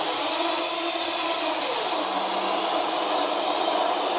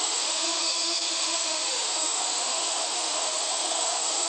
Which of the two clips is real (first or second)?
first